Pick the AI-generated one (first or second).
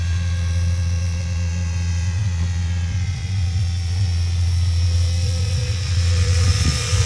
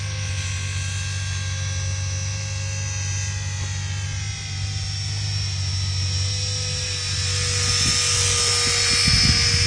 first